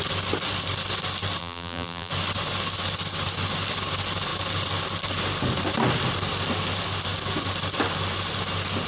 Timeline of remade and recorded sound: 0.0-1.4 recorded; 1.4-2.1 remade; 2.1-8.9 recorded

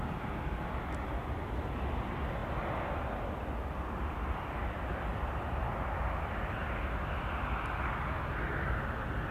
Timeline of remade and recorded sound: 0.0-5.2 recorded; 5.2-7.3 remade; 7.3-9.3 recorded

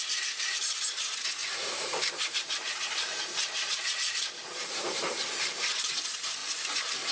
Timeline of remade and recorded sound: 0.0-1.4 recorded; 1.4-5.7 remade; 5.7-6.4 recorded; 6.4-7.1 remade

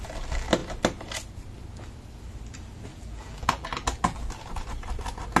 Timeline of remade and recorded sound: 0.0-2.9 recorded; 2.9-4.2 remade; 4.2-5.4 recorded

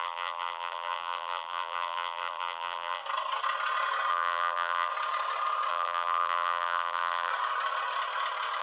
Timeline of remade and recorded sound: 0.0-3.0 remade; 3.0-4.1 recorded; 4.1-4.9 remade; 4.9-5.7 recorded; 5.7-7.3 remade; 7.3-8.6 recorded